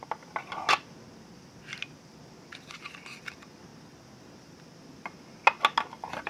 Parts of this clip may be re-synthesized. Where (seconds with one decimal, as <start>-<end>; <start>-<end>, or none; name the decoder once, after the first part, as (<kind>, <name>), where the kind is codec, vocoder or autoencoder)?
none